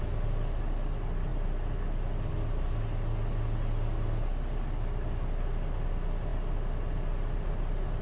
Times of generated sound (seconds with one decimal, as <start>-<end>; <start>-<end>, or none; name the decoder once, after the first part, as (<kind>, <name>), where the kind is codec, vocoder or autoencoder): none